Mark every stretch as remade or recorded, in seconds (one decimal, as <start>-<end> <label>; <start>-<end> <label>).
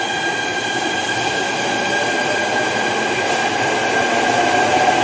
0.0-5.0 recorded